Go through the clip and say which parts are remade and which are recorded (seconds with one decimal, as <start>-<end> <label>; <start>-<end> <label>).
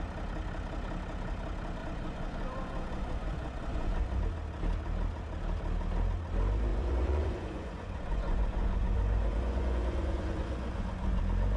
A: 0.0-1.8 recorded; 1.8-4.2 remade; 4.2-6.7 recorded; 6.7-11.2 remade; 11.2-11.6 recorded